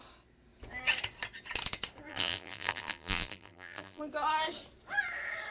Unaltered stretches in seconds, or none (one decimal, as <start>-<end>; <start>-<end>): 0.0-2.1; 4.0-5.5